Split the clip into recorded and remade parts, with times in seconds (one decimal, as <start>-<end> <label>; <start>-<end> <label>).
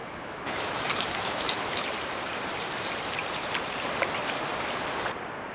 0.0-1.9 remade; 1.9-5.5 recorded